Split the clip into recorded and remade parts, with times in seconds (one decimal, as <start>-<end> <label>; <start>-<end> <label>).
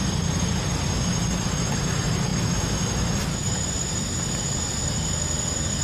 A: 0.0-5.8 recorded